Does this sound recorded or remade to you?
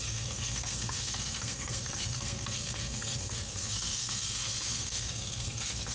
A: remade